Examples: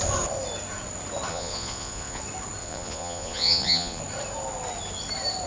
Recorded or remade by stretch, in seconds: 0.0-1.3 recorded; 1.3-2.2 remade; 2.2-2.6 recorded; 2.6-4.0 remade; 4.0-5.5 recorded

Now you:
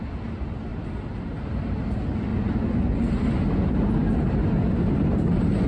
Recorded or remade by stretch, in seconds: 0.0-0.7 recorded; 0.7-1.4 remade; 1.4-5.7 recorded

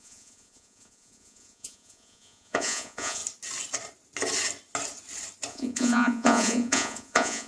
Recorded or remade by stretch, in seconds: 0.0-3.2 remade; 3.2-5.5 recorded; 5.5-7.5 remade

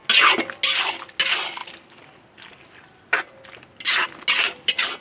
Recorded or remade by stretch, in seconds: 0.0-5.0 recorded

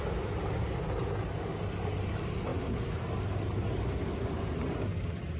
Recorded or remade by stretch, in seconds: 0.0-5.4 recorded

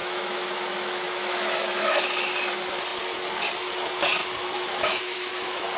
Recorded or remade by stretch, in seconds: 0.0-2.0 remade; 2.0-4.2 recorded; 4.2-5.8 remade